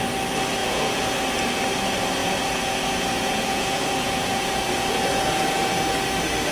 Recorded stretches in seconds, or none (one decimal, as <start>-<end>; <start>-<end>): 0.0-0.6; 1.2-2.2; 5.9-6.5